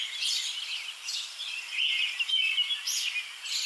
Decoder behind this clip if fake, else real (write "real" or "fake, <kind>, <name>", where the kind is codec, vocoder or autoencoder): real